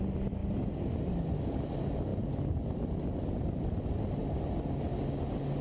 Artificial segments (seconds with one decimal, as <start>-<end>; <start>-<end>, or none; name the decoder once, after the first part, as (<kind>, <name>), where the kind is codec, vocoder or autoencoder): 2.1-3.8 (vocoder, BigVGAN v2)